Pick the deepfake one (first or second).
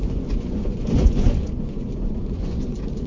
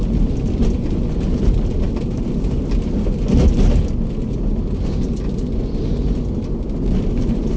first